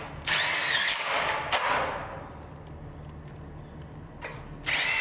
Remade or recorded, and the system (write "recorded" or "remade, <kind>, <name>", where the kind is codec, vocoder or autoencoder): recorded